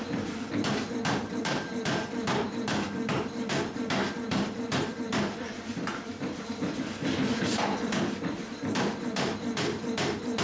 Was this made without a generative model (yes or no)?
no